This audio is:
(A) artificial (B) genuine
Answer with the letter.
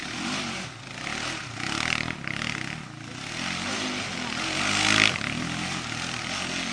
B